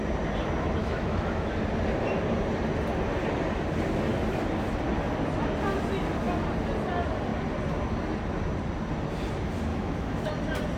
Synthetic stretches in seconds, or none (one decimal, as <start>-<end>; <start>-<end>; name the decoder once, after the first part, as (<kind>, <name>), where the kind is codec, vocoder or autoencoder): 0.8-1.5 (autoencoder, DAC-VAE); 9.7-10.3